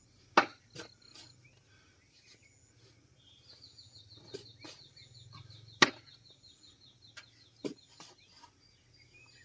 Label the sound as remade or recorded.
recorded